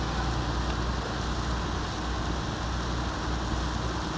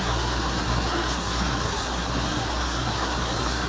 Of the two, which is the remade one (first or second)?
second